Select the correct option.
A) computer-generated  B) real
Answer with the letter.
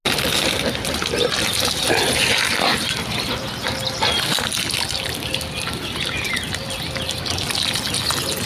B